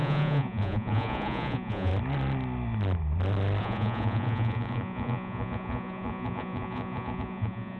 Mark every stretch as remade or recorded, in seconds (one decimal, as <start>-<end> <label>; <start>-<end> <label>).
0.0-1.9 remade; 1.9-3.6 recorded; 3.6-7.8 remade